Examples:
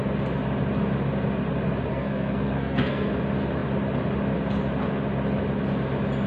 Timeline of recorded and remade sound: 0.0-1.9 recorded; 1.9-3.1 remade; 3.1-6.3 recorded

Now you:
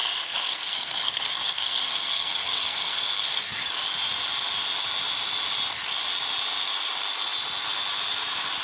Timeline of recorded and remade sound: 0.0-3.6 remade; 3.6-8.6 recorded

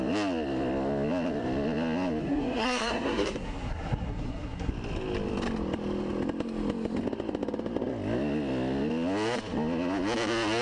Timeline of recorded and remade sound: 0.0-2.2 recorded; 2.2-4.7 remade; 4.7-10.6 recorded

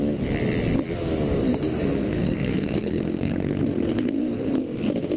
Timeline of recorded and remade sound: 0.0-1.5 recorded; 1.5-4.6 remade; 4.6-5.2 recorded

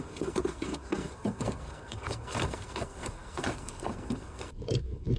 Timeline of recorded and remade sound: 0.0-5.2 remade

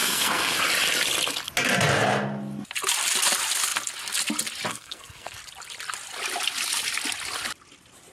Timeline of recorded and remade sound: 0.0-0.6 remade; 0.6-4.7 recorded; 4.7-5.4 remade; 5.4-8.1 recorded